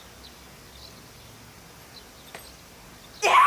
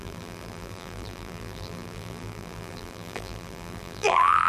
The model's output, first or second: second